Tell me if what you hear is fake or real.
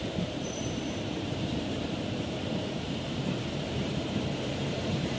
fake